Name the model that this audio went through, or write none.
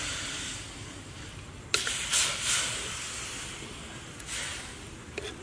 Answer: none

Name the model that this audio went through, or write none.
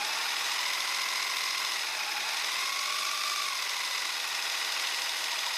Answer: none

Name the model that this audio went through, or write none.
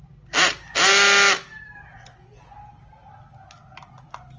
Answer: none